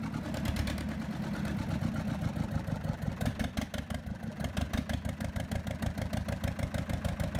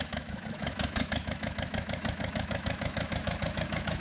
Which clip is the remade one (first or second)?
second